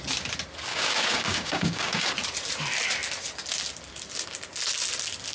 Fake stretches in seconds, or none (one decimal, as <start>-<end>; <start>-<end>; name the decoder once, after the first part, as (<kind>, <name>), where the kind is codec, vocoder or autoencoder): 0.7-2.1 (codec, DAC)